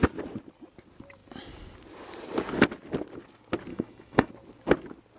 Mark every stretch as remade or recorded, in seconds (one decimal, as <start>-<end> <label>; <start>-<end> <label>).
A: 0.0-3.7 recorded; 3.7-4.3 remade; 4.3-5.2 recorded